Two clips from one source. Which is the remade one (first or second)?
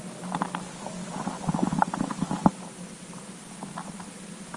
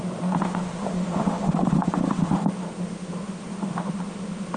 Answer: second